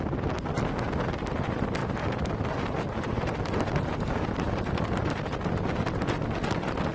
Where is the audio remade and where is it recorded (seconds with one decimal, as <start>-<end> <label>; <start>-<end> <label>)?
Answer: 0.0-6.9 recorded